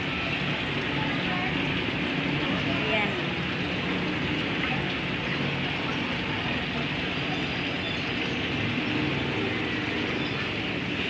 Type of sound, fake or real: real